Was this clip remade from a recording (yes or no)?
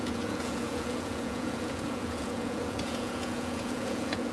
yes